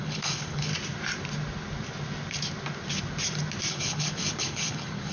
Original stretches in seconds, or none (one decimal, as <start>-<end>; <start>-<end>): 0.7-3.7